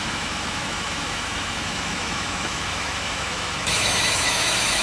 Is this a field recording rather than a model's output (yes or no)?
no